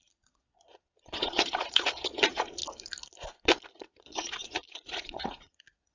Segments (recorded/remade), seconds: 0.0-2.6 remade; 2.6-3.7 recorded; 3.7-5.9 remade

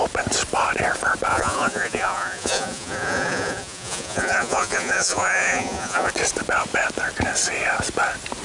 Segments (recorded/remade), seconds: 0.0-1.3 recorded; 1.3-6.1 remade; 6.1-8.4 recorded

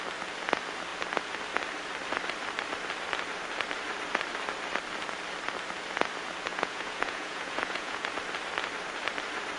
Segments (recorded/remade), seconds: 0.0-6.5 recorded; 6.5-8.1 remade; 8.1-9.6 recorded